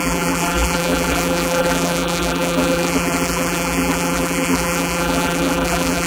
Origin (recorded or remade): remade